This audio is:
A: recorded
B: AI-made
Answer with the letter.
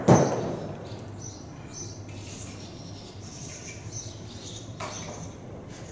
A